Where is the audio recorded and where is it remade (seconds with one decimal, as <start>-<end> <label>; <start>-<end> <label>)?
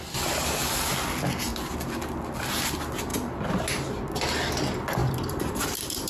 0.0-3.1 recorded; 3.1-3.9 remade; 3.9-5.0 recorded; 5.0-6.1 remade